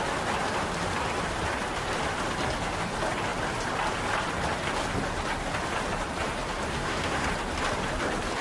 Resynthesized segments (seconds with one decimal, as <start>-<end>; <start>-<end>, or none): 6.7-7.3